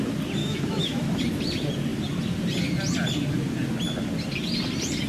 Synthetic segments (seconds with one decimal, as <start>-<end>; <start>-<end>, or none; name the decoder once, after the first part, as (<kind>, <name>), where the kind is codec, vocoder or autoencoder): 0.4-1.2 (autoencoder, DAC-VAE)